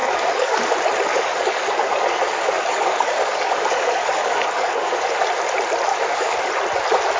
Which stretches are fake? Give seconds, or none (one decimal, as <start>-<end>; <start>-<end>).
0.0-0.7; 1.1-5.1; 5.9-6.5